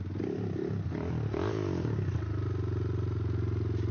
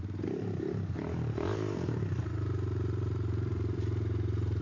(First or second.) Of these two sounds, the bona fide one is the first